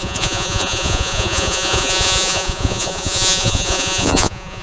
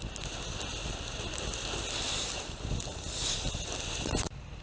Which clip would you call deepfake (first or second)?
first